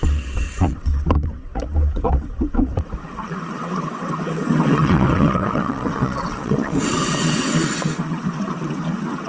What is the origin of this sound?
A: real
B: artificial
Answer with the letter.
B